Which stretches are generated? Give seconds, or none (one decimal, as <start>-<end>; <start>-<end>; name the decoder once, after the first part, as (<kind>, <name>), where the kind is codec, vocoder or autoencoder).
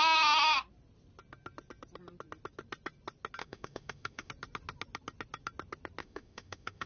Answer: 3.4-4.3 (autoencoder, DAC-VAE); 6.0-6.9